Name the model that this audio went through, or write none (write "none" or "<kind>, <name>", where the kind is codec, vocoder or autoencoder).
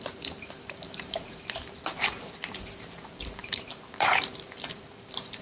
vocoder, BigVGAN v2